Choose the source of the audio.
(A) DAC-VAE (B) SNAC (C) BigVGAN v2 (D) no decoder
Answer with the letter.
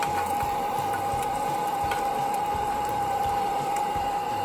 D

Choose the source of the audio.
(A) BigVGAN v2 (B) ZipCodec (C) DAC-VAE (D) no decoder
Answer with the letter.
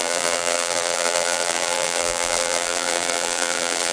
A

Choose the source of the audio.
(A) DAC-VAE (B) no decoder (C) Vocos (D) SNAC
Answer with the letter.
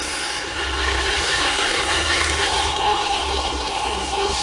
D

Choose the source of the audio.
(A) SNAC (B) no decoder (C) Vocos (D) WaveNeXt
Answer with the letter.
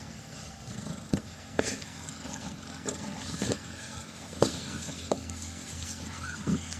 A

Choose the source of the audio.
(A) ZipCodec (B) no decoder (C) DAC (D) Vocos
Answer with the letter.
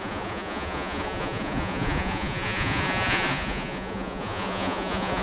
D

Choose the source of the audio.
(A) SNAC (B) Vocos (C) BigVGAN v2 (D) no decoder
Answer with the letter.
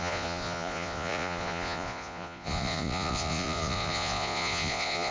B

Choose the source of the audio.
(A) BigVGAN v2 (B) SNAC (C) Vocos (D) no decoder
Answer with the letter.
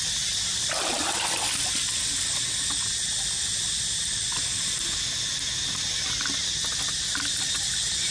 D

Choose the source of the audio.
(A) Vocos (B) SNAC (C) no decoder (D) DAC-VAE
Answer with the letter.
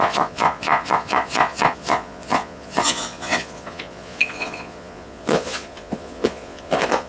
A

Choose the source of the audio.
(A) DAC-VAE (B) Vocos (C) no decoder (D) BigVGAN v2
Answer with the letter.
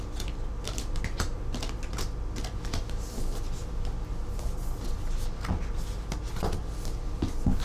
C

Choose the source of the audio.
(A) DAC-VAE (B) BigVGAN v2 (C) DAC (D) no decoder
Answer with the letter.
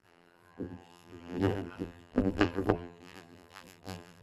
B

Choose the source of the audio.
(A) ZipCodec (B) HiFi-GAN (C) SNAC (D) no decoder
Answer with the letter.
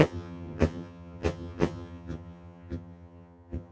B